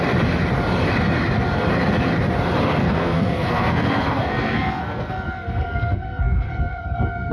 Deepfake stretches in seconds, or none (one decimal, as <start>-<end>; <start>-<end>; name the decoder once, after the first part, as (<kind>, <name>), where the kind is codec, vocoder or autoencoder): 2.8-7.3 (codec, SNAC)